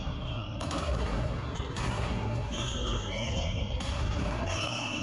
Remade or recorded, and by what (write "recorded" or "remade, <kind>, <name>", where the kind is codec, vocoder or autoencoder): remade, codec, SNAC